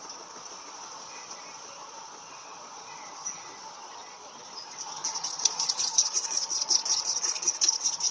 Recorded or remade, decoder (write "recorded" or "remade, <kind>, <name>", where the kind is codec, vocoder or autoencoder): remade, vocoder, Vocos